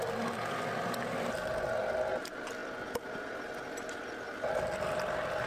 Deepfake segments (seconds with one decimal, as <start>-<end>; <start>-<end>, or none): 2.6-3.4